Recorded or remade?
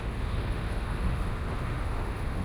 remade